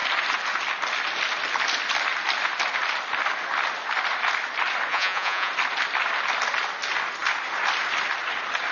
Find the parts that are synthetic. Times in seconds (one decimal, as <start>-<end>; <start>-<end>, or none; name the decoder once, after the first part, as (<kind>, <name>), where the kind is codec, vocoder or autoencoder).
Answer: 4.9-5.5 (vocoder, Vocos)